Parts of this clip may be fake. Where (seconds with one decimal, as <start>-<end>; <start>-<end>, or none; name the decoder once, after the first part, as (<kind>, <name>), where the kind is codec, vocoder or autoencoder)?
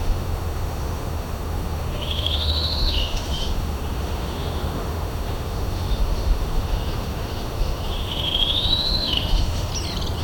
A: 0.0-9.7 (autoencoder, DAC-VAE)